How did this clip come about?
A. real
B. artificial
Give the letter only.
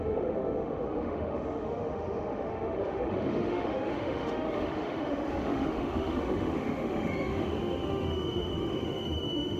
B